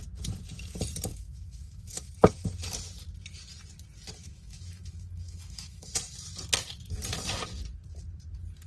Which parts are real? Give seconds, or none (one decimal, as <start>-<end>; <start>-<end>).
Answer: 0.0-1.1; 2.1-4.2; 5.9-8.7